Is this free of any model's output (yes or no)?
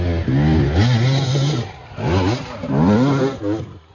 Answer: yes